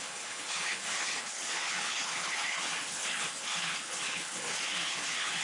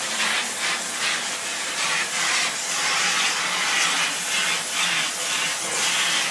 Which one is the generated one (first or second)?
first